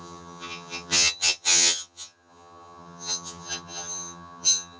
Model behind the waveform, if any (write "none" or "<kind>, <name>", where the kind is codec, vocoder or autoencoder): vocoder, HiFi-GAN